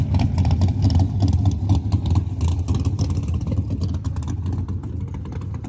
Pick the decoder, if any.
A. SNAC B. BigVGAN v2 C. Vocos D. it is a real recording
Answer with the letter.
D